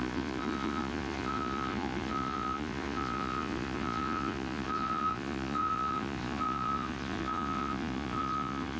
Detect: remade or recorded remade